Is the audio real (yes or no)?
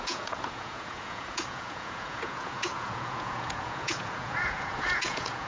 no